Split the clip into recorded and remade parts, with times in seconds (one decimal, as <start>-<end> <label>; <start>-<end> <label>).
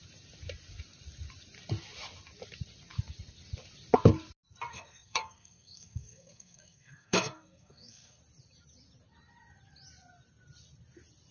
0.0-4.7 recorded; 4.7-8.2 remade; 8.2-11.3 recorded